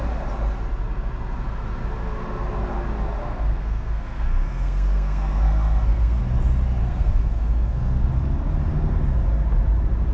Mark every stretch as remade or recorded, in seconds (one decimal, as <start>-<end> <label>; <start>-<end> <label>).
0.0-3.2 recorded; 3.2-6.2 remade; 6.2-6.8 recorded; 6.8-8.1 remade; 8.1-10.1 recorded